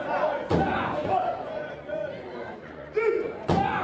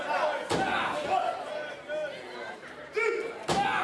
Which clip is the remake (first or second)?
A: first